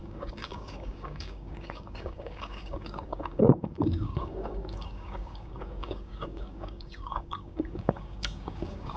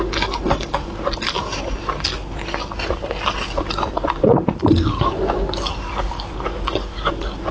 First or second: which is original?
second